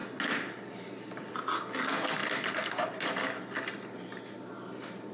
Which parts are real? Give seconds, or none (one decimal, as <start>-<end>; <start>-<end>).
0.0-5.1